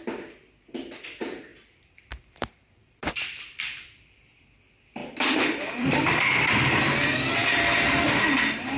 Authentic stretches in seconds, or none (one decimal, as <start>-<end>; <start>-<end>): 0.0-1.5; 4.4-5.0; 6.8-7.4; 8.1-8.8